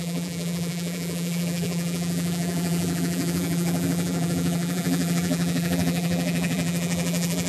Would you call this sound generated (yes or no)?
yes